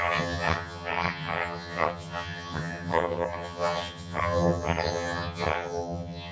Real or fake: fake